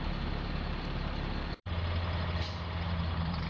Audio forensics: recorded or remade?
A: remade